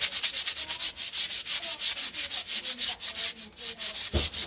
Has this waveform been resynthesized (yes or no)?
no